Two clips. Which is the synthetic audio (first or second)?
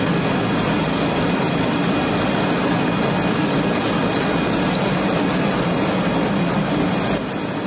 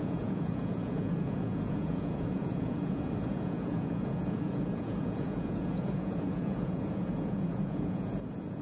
second